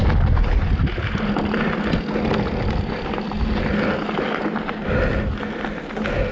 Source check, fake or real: real